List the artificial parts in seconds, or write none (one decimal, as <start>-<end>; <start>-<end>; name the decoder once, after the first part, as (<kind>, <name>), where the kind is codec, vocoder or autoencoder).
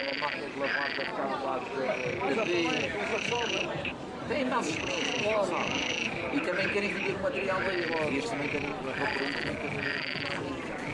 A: 3.1-7.6 (vocoder, BigVGAN v2)